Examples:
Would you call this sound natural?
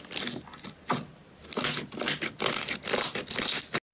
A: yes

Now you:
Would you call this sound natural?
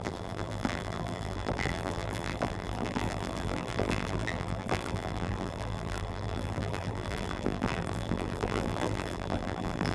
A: no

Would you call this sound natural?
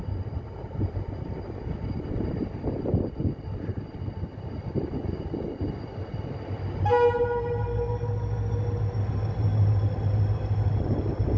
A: yes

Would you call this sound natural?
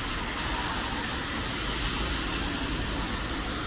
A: yes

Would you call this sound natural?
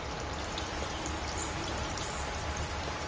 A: no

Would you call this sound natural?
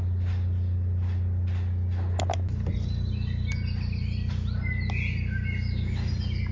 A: yes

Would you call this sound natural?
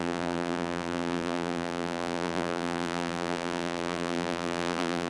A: no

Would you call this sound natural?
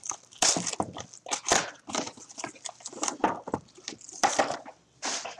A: yes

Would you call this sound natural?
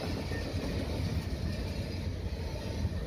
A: yes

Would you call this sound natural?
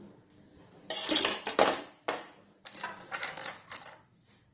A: yes